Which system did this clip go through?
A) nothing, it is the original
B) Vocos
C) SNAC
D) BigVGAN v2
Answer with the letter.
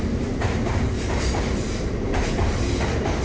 D